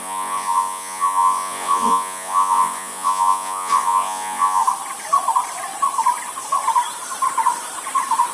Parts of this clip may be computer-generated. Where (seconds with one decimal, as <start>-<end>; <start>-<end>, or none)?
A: 0.0-4.6